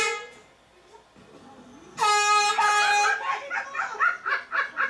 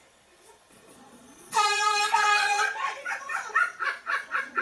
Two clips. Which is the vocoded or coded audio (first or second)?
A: second